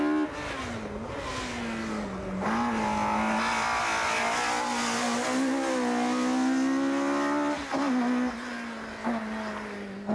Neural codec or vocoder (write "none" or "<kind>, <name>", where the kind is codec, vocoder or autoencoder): none